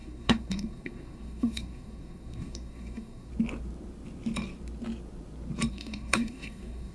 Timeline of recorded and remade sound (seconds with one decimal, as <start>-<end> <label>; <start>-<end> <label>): 0.0-3.3 remade; 3.3-5.7 recorded; 5.7-6.9 remade